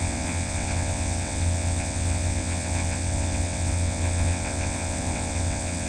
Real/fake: fake